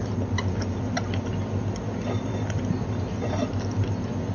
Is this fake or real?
real